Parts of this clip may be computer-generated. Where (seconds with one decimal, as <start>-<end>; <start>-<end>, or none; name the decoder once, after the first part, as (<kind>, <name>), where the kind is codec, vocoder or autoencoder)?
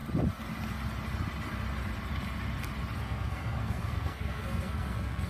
3.0-5.3 (codec, SNAC)